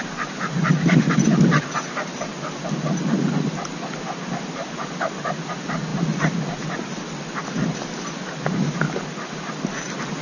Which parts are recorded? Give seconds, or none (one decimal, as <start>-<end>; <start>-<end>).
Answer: 0.0-10.2